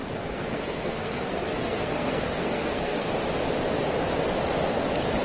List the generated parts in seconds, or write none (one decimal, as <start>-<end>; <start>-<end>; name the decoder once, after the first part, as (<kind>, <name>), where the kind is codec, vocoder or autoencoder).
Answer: 0.0-3.1 (codec, SNAC)